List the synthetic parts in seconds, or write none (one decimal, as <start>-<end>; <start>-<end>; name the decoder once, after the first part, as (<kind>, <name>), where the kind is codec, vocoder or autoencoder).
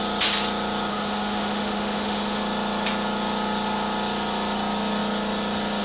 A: 0.9-2.4 (autoencoder, DAC-VAE)